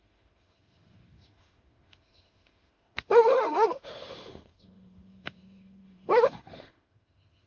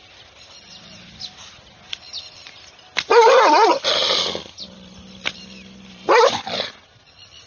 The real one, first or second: second